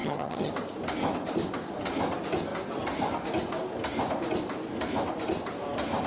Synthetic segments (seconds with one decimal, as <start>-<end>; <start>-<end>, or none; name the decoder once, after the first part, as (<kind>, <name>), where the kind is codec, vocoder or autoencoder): 0.0-0.5 (vocoder, HiFi-GAN)